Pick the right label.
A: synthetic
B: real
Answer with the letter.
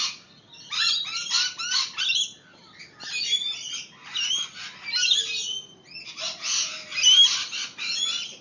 B